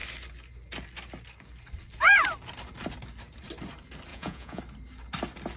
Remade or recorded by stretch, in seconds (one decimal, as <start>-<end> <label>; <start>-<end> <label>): 0.0-4.1 recorded; 4.1-4.6 remade; 4.6-5.6 recorded